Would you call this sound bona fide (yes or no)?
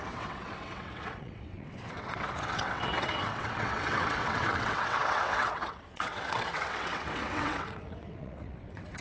no